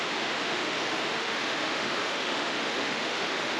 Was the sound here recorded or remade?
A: remade